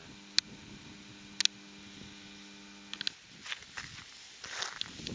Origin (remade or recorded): recorded